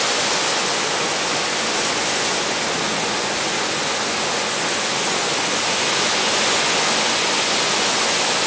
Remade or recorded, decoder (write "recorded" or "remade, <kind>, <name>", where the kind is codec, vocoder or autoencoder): remade, vocoder, Vocos